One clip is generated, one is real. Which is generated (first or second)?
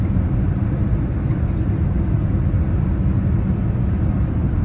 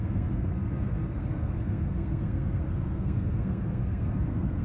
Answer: second